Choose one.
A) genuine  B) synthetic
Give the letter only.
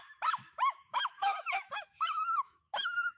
B